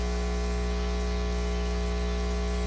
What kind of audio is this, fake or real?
real